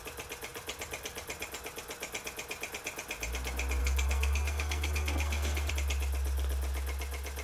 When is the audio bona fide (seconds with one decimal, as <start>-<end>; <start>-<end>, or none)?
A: 0.0-3.8; 5.7-7.4